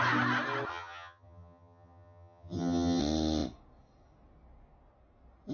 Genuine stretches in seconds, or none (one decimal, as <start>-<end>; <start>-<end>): 0.0-0.7; 3.0-5.5